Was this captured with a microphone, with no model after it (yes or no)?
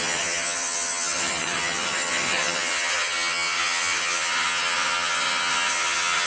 no